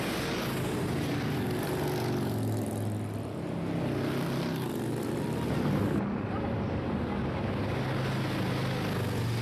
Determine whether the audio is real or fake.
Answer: real